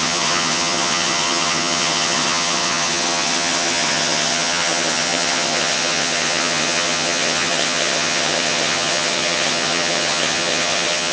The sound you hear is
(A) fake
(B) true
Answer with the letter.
A